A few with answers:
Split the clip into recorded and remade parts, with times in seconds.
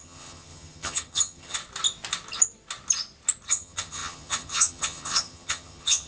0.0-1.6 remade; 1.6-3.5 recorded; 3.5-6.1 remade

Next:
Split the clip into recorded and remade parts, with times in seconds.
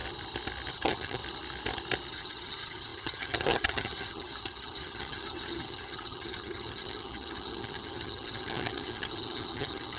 0.0-0.7 recorded; 0.7-1.2 remade; 1.2-2.1 recorded; 2.1-10.0 remade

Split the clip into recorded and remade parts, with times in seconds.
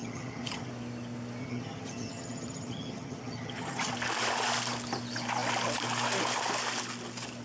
0.0-0.7 remade; 0.7-1.4 recorded; 1.4-3.9 remade; 3.9-7.4 recorded